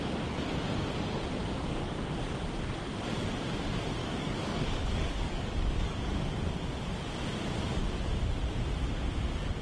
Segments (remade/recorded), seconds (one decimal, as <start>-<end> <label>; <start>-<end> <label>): 0.0-1.4 recorded; 1.4-2.0 remade; 2.0-4.0 recorded; 4.0-6.1 remade; 6.1-9.6 recorded